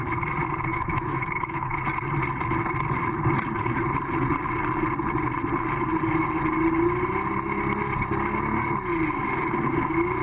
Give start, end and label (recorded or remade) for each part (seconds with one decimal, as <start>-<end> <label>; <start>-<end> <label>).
0.0-0.7 recorded; 0.7-1.8 remade; 1.8-10.2 recorded